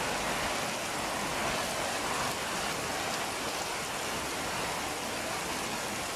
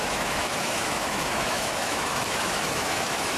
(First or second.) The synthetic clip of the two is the second